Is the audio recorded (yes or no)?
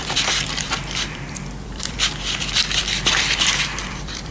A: no